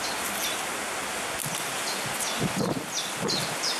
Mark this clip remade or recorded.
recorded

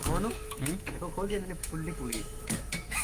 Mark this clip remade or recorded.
remade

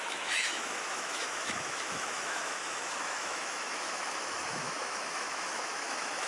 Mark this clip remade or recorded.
remade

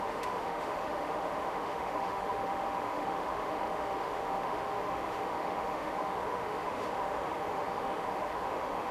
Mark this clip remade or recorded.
remade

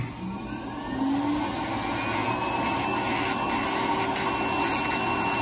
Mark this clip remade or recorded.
recorded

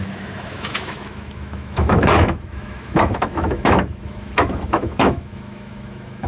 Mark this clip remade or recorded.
remade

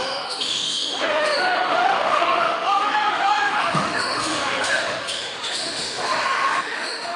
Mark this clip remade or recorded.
remade